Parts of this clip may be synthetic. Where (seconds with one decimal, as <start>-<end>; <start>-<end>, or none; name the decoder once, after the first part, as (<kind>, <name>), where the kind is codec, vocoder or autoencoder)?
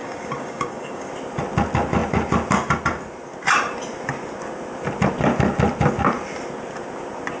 0.0-1.1 (codec, DAC)